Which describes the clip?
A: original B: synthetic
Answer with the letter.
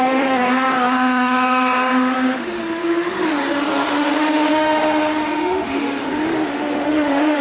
B